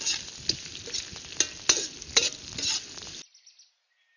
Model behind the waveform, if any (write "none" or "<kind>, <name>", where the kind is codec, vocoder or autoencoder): none